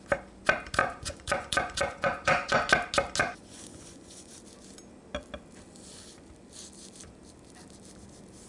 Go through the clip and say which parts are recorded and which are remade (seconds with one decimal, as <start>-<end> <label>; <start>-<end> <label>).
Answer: 0.0-0.8 recorded; 0.8-2.7 remade; 2.7-3.2 recorded; 3.2-4.3 remade; 4.3-8.5 recorded

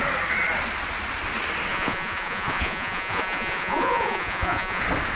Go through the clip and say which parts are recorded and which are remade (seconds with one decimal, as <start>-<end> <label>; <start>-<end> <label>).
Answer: 0.0-1.7 recorded; 1.7-4.8 remade; 4.8-5.2 recorded

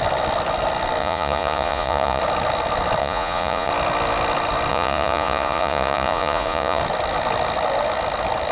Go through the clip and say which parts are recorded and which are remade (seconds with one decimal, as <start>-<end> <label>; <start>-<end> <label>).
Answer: 0.0-1.0 recorded; 1.0-2.2 remade; 2.2-3.0 recorded; 3.0-3.7 remade; 3.7-4.7 recorded; 4.7-6.8 remade; 6.8-8.5 recorded

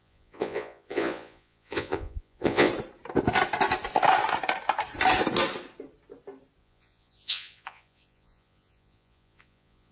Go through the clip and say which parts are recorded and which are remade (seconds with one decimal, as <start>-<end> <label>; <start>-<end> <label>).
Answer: 0.0-2.7 remade; 2.7-6.6 recorded; 6.6-9.9 remade

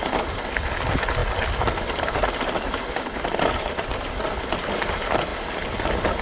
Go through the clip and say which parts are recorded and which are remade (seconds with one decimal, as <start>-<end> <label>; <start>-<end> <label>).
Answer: 0.0-6.2 recorded